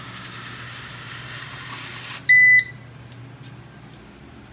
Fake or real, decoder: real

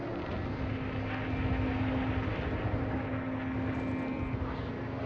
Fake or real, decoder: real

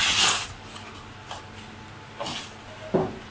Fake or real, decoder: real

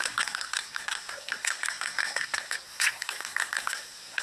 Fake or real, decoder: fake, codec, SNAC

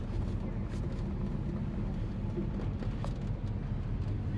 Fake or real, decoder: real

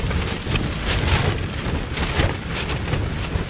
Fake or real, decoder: real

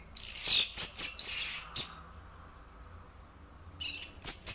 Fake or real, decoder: real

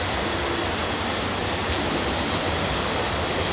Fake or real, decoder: real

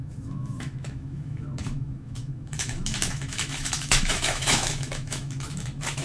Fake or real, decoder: fake, autoencoder, DAC-VAE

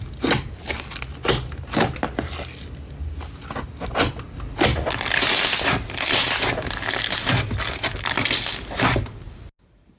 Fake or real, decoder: real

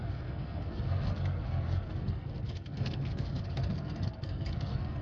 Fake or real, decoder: fake, codec, SNAC